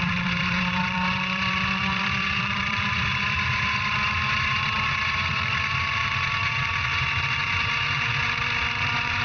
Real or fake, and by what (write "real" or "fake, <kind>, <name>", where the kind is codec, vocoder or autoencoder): fake, vocoder, BigVGAN v2